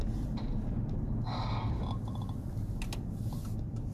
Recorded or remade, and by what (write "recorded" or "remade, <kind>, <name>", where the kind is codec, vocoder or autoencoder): recorded